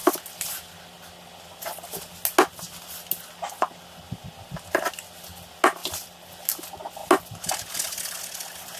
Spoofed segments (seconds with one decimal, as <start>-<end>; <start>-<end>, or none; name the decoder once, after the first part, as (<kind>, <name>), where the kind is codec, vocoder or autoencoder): 5.8-6.6 (vocoder, BigVGAN v2)